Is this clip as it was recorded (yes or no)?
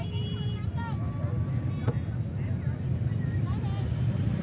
yes